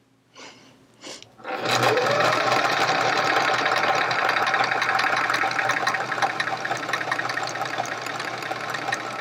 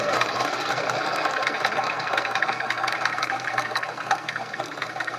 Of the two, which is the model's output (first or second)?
second